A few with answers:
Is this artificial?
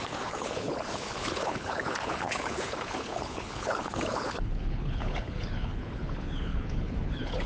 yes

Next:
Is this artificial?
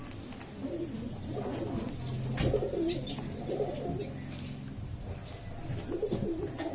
no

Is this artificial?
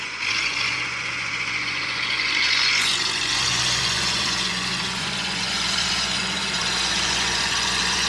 yes